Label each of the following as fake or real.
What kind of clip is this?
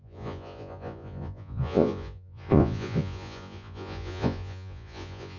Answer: fake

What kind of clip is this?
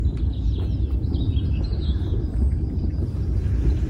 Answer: real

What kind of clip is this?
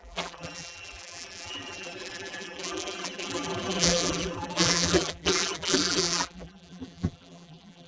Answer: fake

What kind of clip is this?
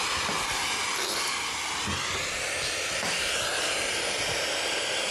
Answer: real